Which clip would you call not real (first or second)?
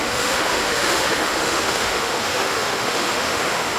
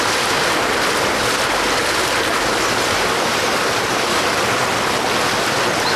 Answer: first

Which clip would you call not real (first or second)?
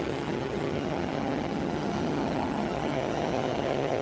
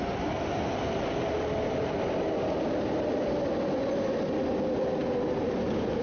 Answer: first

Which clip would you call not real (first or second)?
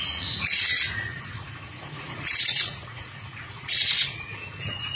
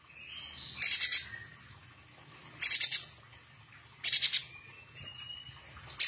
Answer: first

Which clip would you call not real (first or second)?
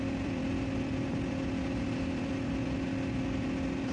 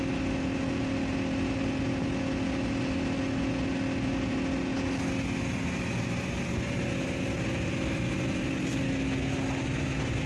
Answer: first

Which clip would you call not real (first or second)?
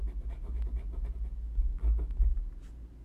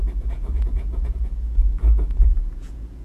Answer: second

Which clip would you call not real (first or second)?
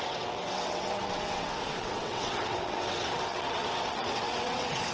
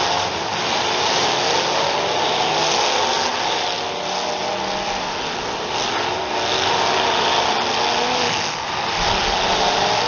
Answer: first